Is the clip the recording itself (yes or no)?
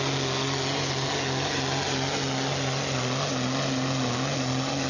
yes